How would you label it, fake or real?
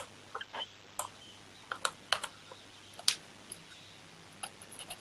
real